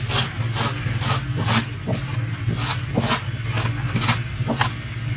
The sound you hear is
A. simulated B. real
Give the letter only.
B